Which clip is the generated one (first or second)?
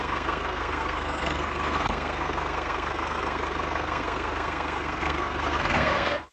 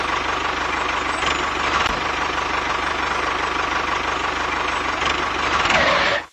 first